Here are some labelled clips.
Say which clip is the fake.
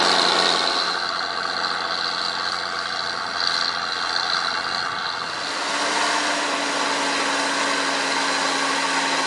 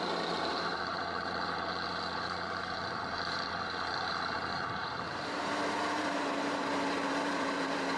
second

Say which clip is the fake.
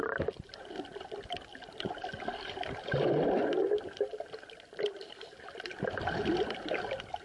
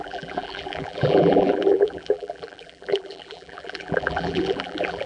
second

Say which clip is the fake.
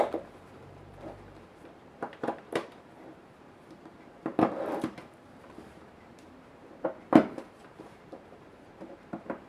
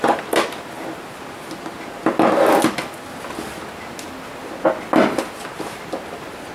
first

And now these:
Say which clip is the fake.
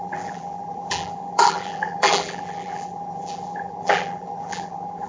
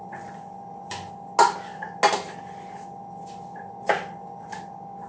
first